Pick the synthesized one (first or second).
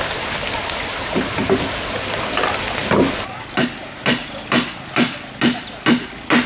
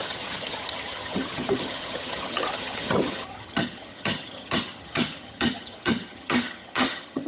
second